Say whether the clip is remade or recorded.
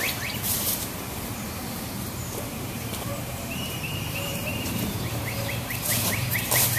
remade